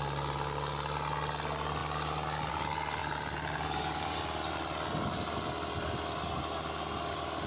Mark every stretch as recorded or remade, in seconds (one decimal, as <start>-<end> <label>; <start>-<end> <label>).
0.0-3.0 recorded; 3.0-4.2 remade; 4.2-7.5 recorded